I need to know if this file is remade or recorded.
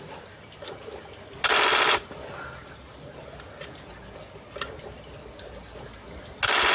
recorded